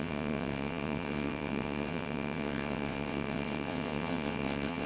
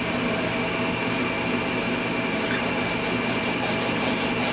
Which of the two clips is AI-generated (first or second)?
first